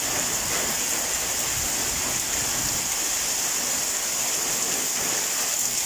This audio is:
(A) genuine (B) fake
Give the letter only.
A